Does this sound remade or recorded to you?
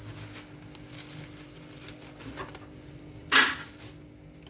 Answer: recorded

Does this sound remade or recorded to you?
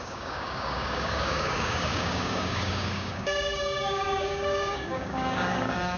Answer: remade